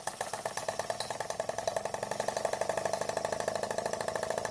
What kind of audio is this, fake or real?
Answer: real